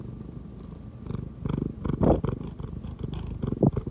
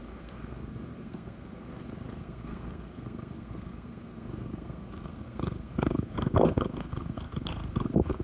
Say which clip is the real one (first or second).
first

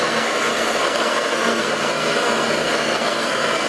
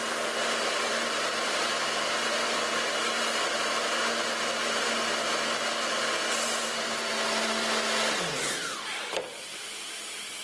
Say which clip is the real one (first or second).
second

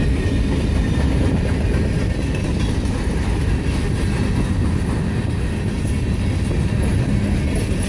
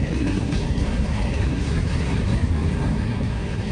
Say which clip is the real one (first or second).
first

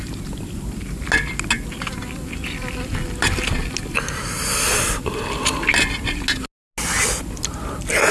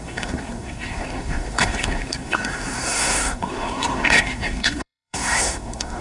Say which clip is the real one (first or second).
first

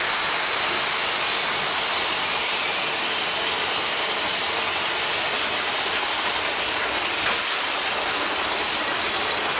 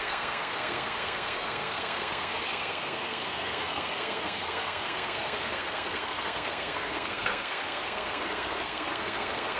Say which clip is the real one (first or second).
first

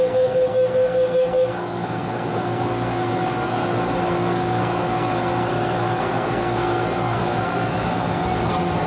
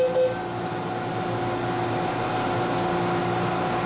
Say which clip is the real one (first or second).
second